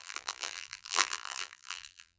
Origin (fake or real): fake